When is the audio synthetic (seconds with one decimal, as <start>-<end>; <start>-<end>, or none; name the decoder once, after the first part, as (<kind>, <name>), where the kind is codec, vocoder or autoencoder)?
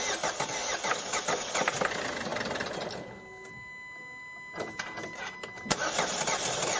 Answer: none